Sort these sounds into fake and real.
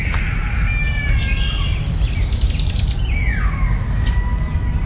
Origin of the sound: real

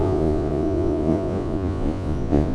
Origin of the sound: fake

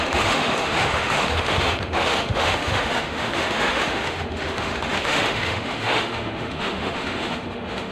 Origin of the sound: fake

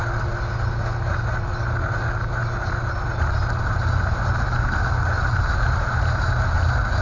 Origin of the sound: real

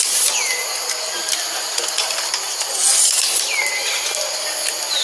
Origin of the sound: real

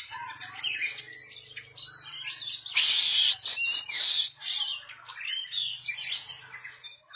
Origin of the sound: real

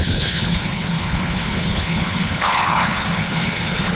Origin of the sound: fake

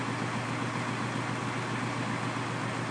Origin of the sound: real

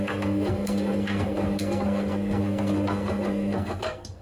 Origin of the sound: fake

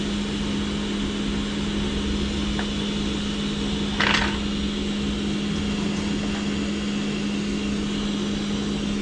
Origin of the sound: real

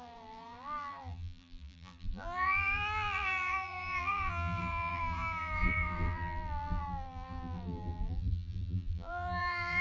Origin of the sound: fake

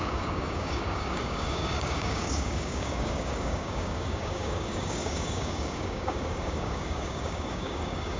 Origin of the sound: fake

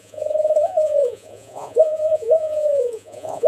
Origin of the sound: fake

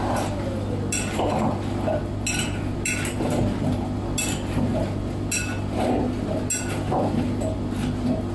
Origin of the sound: real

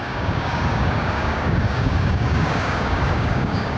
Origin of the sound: fake